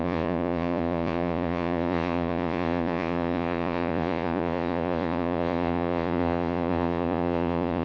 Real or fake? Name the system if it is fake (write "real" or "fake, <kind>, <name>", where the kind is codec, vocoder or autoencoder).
fake, vocoder, Vocos